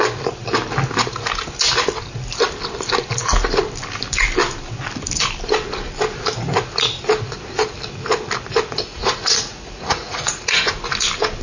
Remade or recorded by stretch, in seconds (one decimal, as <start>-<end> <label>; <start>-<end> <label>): 0.0-8.9 recorded; 8.9-10.8 remade; 10.8-11.4 recorded